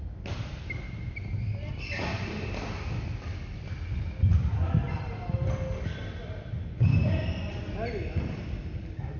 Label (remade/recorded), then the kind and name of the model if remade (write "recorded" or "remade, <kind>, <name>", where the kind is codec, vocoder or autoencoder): recorded